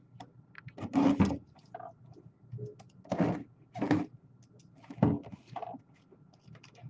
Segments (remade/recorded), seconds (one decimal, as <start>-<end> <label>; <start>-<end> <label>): 0.0-6.9 recorded